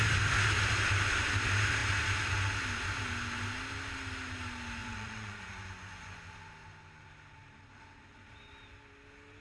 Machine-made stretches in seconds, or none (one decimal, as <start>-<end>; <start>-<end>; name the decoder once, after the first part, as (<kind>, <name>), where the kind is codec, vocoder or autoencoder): 4.8-6.2 (vocoder, Vocos)